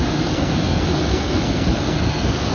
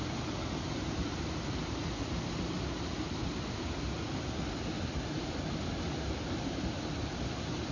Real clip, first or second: second